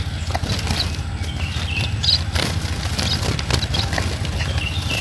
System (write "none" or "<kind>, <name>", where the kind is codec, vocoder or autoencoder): none